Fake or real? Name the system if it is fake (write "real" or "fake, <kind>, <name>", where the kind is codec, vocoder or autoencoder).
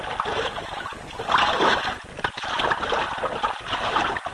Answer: real